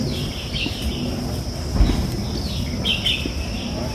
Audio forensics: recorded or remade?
recorded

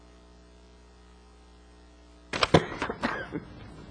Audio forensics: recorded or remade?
recorded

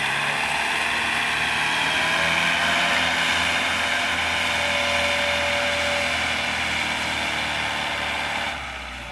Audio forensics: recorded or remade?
recorded